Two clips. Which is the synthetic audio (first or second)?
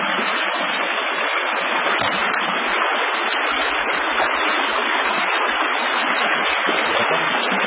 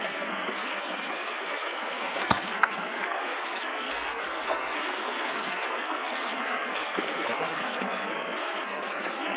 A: second